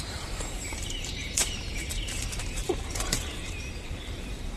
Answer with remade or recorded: remade